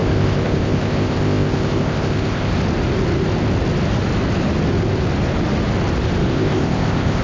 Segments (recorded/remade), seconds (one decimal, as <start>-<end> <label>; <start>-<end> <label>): 0.0-2.5 remade; 2.5-6.3 recorded; 6.3-7.2 remade